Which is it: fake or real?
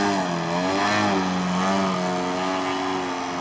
real